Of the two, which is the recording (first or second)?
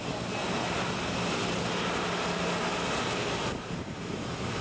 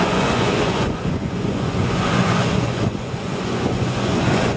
first